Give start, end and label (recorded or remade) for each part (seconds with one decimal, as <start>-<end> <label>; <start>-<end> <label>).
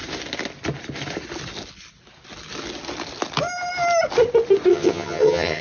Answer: 0.0-4.7 recorded; 4.7-5.6 remade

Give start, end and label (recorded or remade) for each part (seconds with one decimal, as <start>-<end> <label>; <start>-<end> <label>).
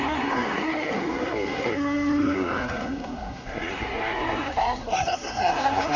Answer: 0.0-6.0 remade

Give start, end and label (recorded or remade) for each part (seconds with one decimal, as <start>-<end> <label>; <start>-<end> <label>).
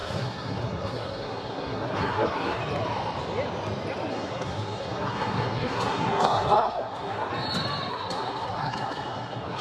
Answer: 0.0-2.6 remade; 2.6-4.1 recorded; 4.1-7.3 remade; 7.3-7.9 recorded; 7.9-9.6 remade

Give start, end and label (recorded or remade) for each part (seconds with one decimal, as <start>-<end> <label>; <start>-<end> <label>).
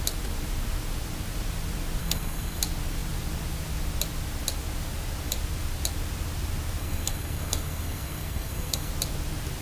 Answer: 0.0-2.0 recorded; 2.0-2.6 remade; 2.6-6.8 recorded; 6.8-8.9 remade; 8.9-9.6 recorded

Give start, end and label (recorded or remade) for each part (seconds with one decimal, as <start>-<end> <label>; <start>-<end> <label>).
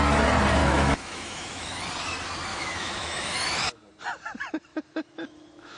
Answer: 0.0-0.6 recorded; 0.6-1.8 remade; 1.8-2.5 recorded; 2.5-3.8 remade; 3.8-4.7 recorded; 4.7-5.8 remade